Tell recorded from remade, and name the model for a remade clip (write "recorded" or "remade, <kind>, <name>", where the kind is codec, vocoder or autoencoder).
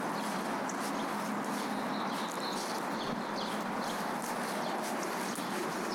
recorded